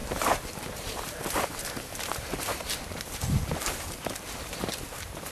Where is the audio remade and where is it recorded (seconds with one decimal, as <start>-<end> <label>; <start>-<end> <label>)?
0.0-1.2 remade; 1.2-1.9 recorded; 1.9-5.3 remade